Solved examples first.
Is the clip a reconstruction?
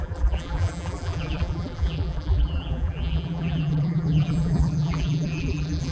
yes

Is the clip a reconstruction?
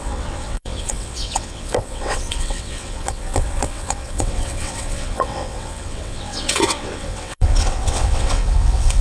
yes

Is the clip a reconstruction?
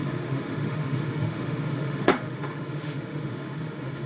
yes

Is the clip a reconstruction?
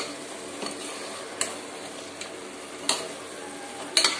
no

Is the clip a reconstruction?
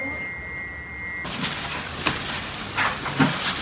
no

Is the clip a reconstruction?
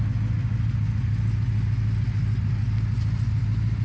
no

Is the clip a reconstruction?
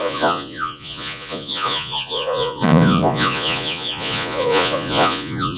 yes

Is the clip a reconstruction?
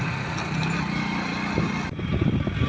no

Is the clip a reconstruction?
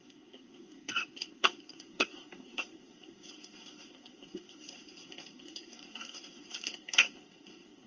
yes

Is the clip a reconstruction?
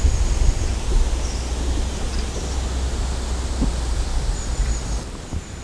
no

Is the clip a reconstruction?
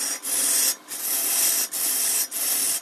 no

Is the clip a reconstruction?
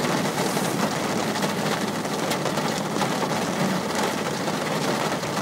no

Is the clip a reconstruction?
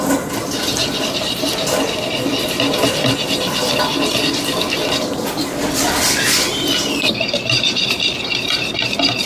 no